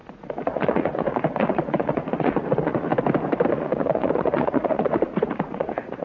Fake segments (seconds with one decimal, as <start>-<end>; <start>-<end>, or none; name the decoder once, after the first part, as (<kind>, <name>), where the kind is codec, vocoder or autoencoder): 0.0-2.9 (vocoder, Vocos); 3.5-6.0